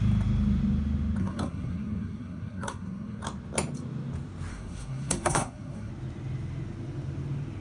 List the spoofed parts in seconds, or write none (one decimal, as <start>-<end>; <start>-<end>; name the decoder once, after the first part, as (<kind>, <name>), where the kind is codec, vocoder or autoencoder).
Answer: 1.2-3.2 (codec, SNAC); 4.5-5.9